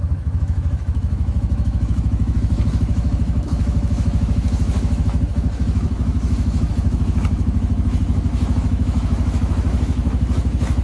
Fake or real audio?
fake